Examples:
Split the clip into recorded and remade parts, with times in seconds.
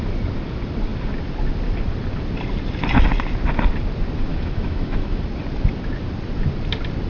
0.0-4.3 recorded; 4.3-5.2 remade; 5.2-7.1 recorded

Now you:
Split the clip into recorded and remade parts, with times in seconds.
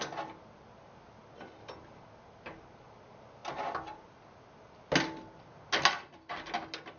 0.0-7.0 recorded